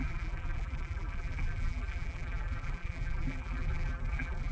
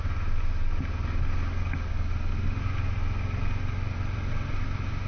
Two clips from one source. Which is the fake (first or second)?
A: first